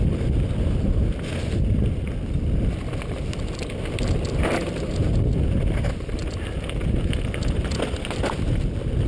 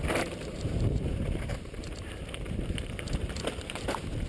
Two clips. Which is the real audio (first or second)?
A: first